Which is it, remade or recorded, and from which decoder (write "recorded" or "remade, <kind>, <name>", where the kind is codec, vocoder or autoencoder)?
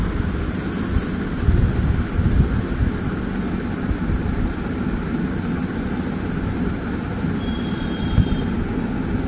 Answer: recorded